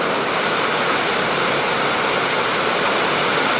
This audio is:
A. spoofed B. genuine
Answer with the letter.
B